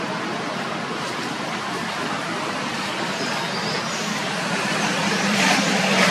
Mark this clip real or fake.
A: fake